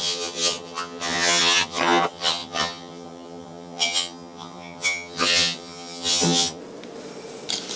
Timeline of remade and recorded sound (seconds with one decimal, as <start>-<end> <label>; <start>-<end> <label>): 0.0-6.6 remade; 6.6-7.8 recorded